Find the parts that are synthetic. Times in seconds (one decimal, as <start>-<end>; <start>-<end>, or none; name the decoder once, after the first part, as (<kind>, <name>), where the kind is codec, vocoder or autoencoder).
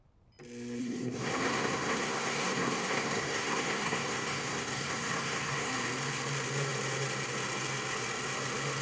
0.8-5.7 (codec, SNAC)